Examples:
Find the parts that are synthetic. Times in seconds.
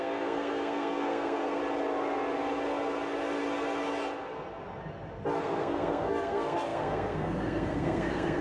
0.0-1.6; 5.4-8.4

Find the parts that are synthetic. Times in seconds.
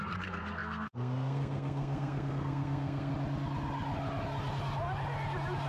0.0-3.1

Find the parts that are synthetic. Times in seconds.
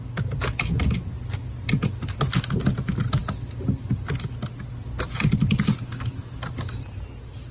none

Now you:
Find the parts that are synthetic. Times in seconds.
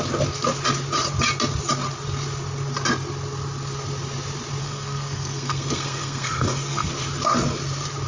4.6-6.9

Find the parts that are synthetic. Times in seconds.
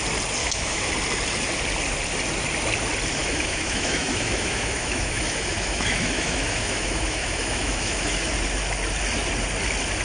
0.4-0.9; 3.2-8.3